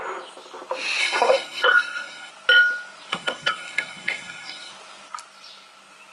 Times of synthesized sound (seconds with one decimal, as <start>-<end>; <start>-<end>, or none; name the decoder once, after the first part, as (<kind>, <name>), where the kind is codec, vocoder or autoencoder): 1.0-2.3 (codec, SNAC); 3.1-4.7

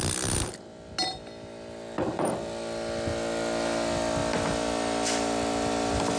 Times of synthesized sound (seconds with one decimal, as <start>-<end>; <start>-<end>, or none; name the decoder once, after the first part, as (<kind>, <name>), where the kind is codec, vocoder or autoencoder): none

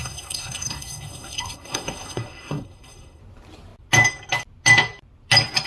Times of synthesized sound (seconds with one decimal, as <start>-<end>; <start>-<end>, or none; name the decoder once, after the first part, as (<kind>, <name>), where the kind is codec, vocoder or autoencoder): 0.0-3.2 (codec, SNAC)

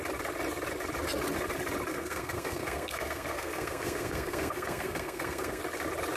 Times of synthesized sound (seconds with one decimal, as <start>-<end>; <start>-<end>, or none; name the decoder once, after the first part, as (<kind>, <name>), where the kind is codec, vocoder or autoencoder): 1.9-5.6 (codec, SNAC)